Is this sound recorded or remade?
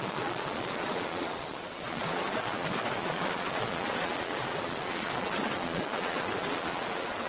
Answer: remade